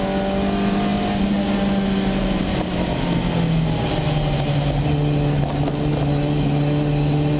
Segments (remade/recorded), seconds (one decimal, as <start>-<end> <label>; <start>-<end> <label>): 0.0-7.4 recorded